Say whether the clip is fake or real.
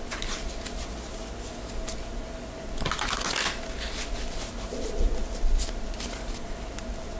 real